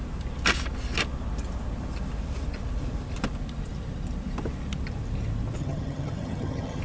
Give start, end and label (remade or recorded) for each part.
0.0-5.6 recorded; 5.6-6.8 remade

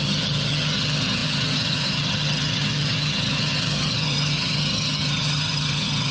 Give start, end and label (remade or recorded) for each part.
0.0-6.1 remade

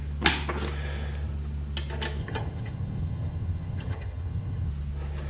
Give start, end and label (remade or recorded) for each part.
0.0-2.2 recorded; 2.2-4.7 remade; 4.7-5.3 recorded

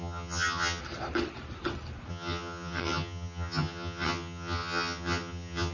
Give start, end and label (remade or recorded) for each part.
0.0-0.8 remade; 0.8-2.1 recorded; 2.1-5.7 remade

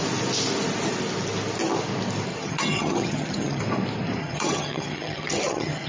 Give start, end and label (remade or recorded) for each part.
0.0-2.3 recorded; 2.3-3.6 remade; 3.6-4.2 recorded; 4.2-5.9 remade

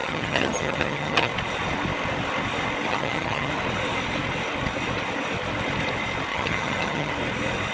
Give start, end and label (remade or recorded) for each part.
0.0-1.3 remade; 1.3-2.9 recorded; 2.9-3.5 remade; 3.5-6.3 recorded; 6.3-7.1 remade; 7.1-7.7 recorded